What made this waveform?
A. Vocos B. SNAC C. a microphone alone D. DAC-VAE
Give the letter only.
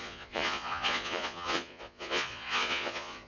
A